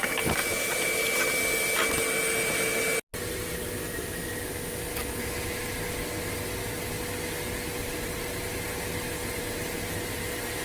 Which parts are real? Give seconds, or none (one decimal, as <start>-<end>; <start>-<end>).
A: 0.0-0.4; 1.0-10.6